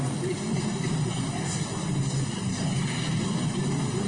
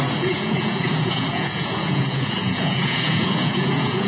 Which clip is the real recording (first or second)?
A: first